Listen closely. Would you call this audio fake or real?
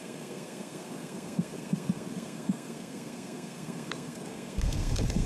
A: fake